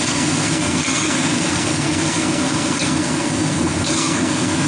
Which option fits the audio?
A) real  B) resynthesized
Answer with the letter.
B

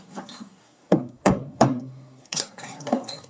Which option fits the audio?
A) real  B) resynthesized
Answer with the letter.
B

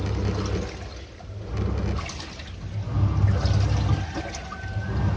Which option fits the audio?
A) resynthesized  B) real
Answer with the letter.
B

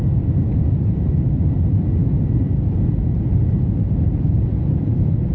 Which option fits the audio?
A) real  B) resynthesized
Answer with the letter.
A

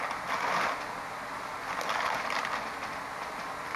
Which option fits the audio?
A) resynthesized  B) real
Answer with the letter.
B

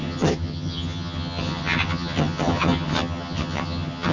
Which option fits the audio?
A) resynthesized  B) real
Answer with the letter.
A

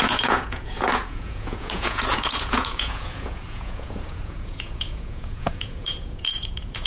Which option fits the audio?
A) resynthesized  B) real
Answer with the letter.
A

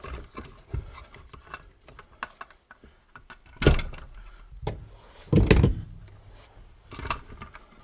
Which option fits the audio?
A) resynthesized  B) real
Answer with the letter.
B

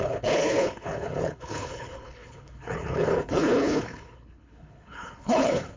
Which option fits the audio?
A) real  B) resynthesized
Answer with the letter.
B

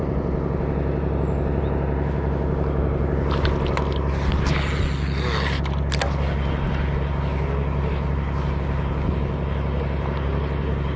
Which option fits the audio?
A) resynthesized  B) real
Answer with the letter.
B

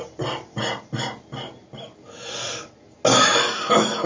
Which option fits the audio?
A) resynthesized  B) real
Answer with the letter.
B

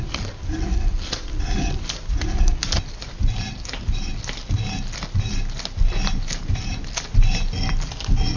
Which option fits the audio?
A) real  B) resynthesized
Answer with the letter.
A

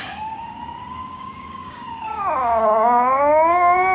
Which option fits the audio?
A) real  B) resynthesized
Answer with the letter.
B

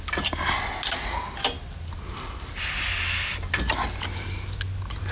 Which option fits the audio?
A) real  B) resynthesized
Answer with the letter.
A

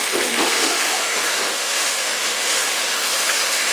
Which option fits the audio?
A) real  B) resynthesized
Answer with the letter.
B